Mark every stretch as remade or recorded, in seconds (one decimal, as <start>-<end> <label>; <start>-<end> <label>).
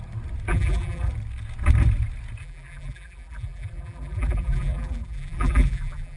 0.0-0.5 recorded; 0.5-1.1 remade; 1.1-2.4 recorded; 2.4-6.2 remade